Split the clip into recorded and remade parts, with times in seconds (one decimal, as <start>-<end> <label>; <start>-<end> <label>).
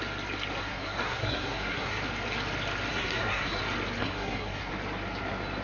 0.0-0.6 recorded; 0.6-2.0 remade; 2.0-2.9 recorded; 2.9-3.6 remade; 3.6-4.0 recorded; 4.0-4.7 remade; 4.7-5.6 recorded